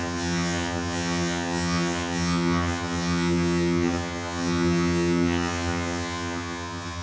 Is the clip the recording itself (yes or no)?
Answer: no